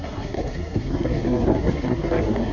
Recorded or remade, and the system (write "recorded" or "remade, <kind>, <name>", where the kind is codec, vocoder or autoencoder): remade, codec, SNAC